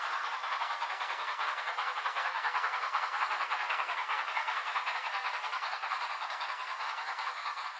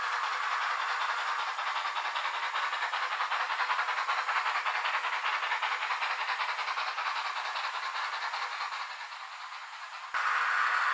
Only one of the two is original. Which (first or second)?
second